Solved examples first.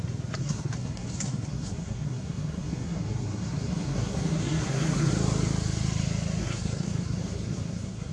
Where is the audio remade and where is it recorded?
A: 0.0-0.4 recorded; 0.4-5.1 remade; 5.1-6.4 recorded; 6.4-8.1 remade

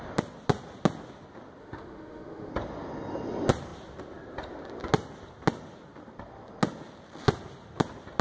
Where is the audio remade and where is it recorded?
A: 0.0-1.6 recorded; 1.6-2.5 remade; 2.5-8.2 recorded

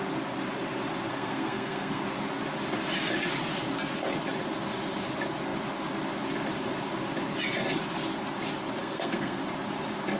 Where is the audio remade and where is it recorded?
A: 0.0-1.1 recorded; 1.1-2.0 remade; 2.0-8.8 recorded; 8.8-9.4 remade; 9.4-10.2 recorded

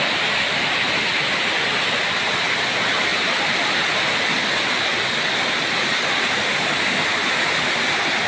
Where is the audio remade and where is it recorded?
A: 0.0-8.3 recorded

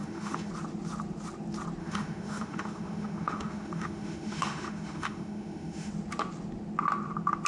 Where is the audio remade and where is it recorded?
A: 0.0-0.5 remade; 0.5-1.8 recorded; 1.8-5.9 remade; 5.9-7.5 recorded

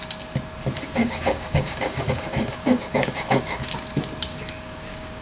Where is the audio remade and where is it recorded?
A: 0.0-1.0 recorded; 1.0-3.7 remade; 3.7-4.3 recorded; 4.3-5.2 remade